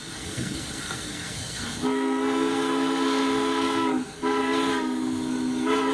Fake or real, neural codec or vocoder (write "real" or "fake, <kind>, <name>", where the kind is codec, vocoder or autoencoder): fake, codec, SNAC